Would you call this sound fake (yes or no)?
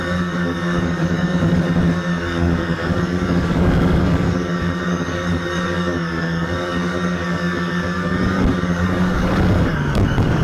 yes